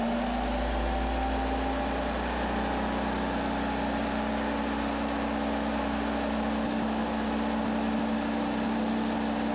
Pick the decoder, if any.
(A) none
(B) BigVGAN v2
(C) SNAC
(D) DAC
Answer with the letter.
A